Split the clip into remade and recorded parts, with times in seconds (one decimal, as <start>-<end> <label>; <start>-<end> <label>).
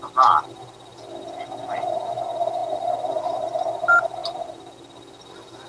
0.0-5.7 recorded